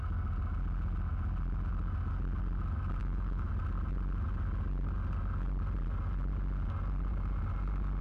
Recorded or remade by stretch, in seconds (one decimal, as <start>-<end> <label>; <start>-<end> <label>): 0.0-3.0 recorded; 3.0-3.5 remade; 3.5-8.0 recorded